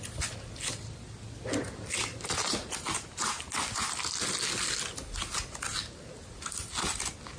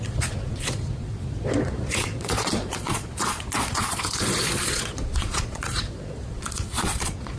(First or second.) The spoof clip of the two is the second